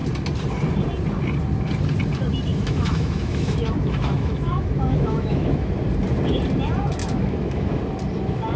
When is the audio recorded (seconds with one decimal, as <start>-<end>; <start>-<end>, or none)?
0.0-2.5; 5.7-7.0; 7.8-8.6